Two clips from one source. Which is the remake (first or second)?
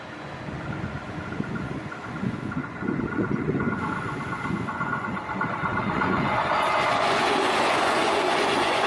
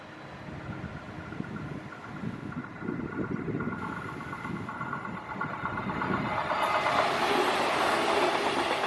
first